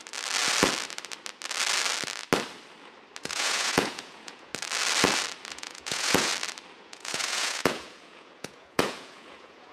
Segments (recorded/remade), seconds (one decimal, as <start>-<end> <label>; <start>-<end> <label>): 0.0-3.2 recorded; 3.2-4.5 remade; 4.5-5.5 recorded; 5.5-6.3 remade; 6.3-6.8 recorded; 6.8-9.7 remade